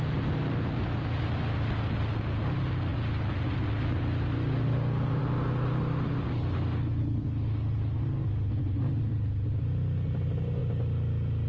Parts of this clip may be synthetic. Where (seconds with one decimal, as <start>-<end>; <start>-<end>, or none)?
none